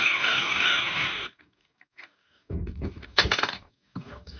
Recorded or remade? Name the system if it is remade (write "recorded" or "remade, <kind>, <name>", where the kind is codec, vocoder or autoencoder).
remade, codec, DAC